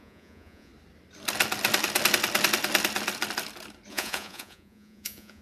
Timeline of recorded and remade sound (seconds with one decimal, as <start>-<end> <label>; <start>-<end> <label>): 0.0-0.7 remade; 0.7-3.9 recorded; 3.9-5.4 remade